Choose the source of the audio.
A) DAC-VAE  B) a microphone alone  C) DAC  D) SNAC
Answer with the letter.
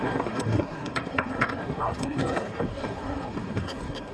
D